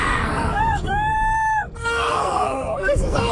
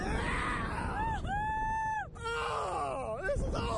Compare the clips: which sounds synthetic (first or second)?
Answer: first